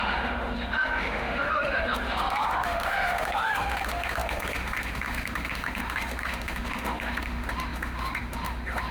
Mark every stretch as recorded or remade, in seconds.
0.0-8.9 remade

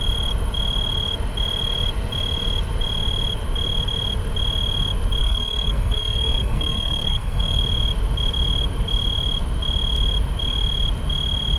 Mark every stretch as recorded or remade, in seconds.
0.0-5.2 recorded; 5.2-7.6 remade; 7.6-11.6 recorded

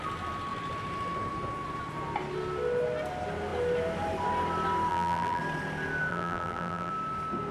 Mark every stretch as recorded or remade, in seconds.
0.0-4.9 recorded; 4.9-5.4 remade; 5.4-6.1 recorded; 6.1-6.9 remade; 6.9-7.5 recorded

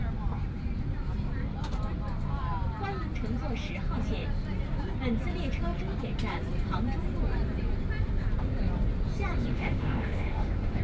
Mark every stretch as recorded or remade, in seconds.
0.0-9.5 recorded; 9.5-10.8 remade